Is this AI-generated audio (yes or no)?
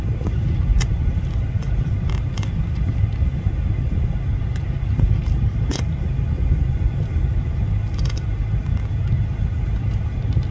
no